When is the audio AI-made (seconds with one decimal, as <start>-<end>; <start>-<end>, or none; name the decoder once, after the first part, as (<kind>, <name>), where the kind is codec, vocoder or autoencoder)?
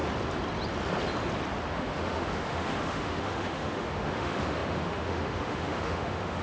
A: 1.7-6.4 (autoencoder, DAC-VAE)